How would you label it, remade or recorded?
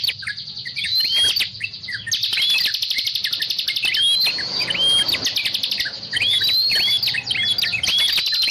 recorded